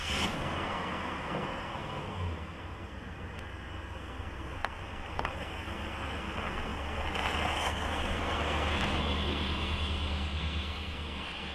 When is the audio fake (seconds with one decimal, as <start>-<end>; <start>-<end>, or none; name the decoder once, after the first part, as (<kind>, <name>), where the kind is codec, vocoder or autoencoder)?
0.0-11.5 (codec, SNAC)